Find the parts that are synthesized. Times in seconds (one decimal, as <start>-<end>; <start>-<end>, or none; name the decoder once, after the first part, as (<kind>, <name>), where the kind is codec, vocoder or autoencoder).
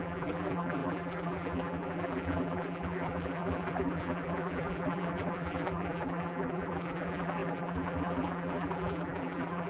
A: 0.0-9.7 (vocoder, BigVGAN v2)